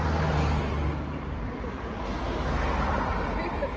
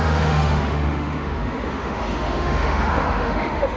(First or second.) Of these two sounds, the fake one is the second